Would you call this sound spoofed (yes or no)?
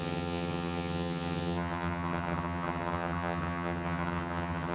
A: yes